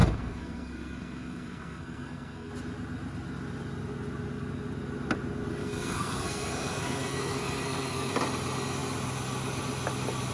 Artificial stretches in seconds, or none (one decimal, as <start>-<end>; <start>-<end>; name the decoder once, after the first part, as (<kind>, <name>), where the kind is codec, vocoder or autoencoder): 0.0-2.5 (codec, SNAC); 5.6-8.1

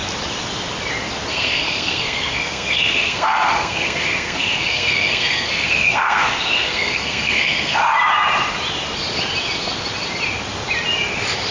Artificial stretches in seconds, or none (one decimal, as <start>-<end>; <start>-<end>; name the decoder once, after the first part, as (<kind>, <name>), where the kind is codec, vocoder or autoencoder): 1.3-7.8 (codec, SNAC)

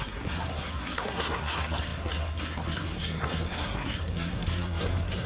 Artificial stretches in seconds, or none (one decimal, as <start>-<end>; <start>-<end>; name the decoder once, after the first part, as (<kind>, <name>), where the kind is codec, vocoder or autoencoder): 0.0-5.3 (codec, SNAC)

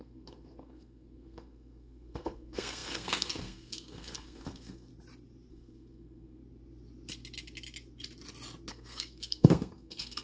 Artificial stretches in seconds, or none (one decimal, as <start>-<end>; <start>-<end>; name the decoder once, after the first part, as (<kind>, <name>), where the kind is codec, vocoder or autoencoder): 0.0-4.9 (codec, SNAC); 5.5-6.4; 8.7-10.2